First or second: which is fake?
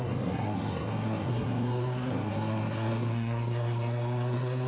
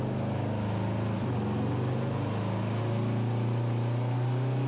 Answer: first